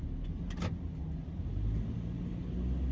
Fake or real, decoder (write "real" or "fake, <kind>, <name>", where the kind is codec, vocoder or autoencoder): real